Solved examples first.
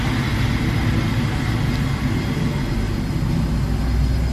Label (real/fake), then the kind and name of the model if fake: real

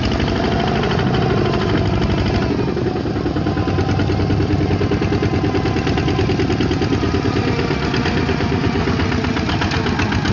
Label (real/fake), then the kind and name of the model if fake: real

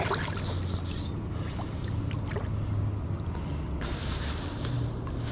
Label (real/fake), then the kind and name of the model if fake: real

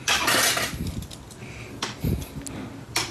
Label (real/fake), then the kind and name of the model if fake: real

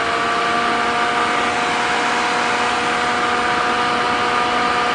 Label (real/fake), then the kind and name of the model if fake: real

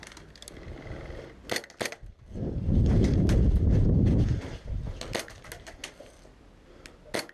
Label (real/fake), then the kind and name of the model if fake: real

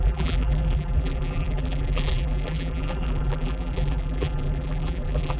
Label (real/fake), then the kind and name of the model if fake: fake, vocoder, BigVGAN v2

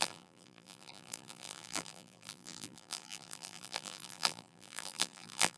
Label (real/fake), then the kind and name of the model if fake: fake, vocoder, BigVGAN v2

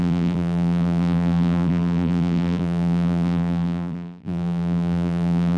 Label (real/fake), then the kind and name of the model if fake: fake, vocoder, BigVGAN v2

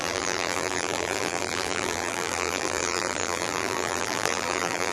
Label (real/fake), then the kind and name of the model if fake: fake, vocoder, BigVGAN v2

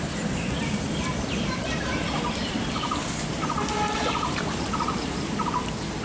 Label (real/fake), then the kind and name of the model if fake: fake, vocoder, BigVGAN v2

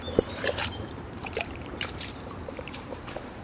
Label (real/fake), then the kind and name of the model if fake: fake, vocoder, BigVGAN v2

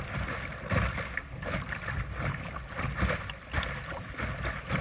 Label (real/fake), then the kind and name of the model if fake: fake, vocoder, BigVGAN v2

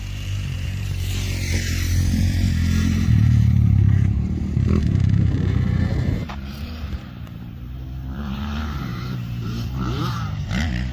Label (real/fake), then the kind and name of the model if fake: fake, vocoder, BigVGAN v2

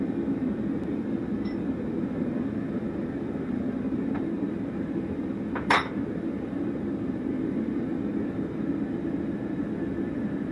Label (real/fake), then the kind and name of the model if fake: fake, vocoder, BigVGAN v2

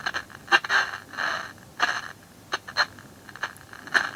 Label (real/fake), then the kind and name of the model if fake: real